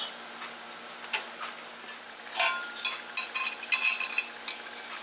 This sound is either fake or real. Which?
real